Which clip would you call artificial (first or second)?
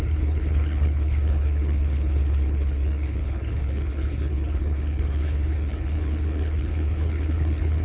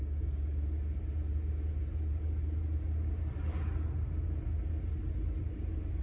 first